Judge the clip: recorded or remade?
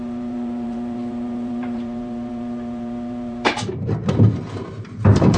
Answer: remade